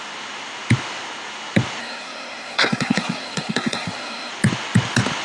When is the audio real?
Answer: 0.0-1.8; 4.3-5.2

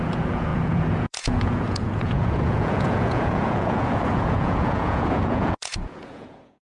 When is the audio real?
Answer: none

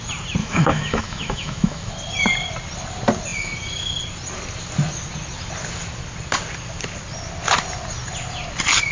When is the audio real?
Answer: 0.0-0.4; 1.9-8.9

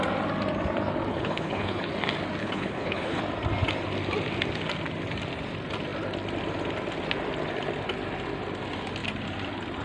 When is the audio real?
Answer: 0.0-1.1; 1.9-2.4; 3.2-9.8

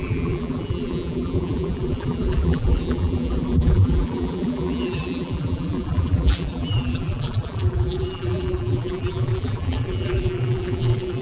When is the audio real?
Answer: none